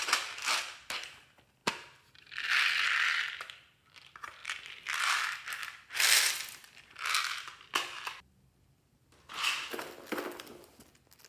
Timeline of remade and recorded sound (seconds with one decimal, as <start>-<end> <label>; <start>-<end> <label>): 0.0-11.3 recorded